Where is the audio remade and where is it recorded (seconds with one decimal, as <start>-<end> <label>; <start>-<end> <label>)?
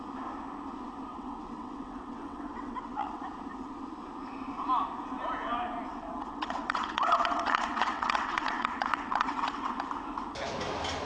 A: 0.0-1.1 recorded; 1.1-3.2 remade; 3.2-5.9 recorded; 5.9-9.7 remade; 9.7-11.1 recorded